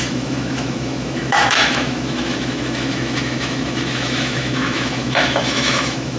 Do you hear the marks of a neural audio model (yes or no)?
yes